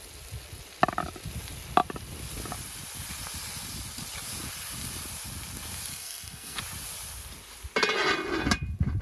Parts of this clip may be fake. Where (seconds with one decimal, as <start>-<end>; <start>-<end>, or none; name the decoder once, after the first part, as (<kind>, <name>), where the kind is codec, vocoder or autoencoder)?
5.9-6.6 (codec, SNAC)